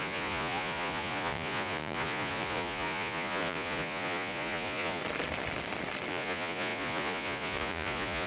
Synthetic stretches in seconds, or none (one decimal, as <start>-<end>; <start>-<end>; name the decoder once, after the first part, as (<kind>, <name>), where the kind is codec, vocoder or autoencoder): 0.0-5.0 (vocoder, Vocos); 6.1-8.3